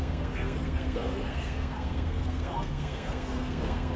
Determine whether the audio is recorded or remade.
remade